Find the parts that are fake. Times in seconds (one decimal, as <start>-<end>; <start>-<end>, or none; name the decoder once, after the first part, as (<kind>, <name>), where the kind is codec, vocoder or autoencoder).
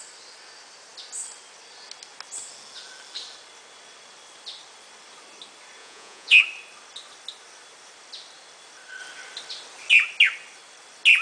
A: 5.8-6.4 (vocoder, Vocos)